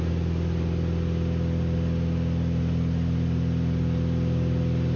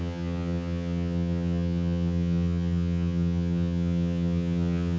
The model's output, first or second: second